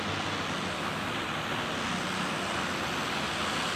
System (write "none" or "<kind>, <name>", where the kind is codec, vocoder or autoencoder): none